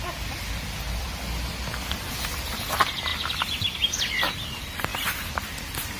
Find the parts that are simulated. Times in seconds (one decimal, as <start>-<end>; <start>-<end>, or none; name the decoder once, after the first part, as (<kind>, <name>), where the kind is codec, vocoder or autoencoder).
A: 0.0-3.1 (vocoder, BigVGAN v2); 4.3-4.9